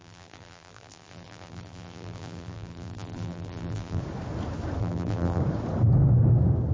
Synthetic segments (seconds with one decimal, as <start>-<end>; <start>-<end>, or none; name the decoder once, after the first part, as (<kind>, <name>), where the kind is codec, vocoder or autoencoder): 0.0-4.0 (vocoder, BigVGAN v2); 4.8-5.4